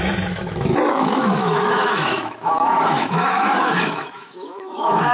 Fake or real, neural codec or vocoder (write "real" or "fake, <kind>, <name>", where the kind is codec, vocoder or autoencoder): fake, autoencoder, DAC-VAE